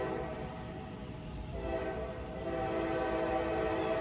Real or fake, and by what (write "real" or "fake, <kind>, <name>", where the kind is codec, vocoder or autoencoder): real